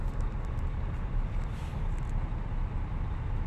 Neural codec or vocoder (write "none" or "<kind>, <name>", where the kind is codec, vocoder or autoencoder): none